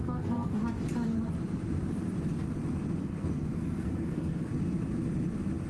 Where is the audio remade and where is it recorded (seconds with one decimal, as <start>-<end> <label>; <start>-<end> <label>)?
0.0-0.6 remade; 0.6-3.0 recorded; 3.0-4.5 remade; 4.5-5.7 recorded